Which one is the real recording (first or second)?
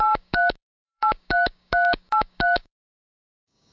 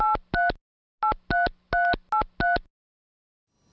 second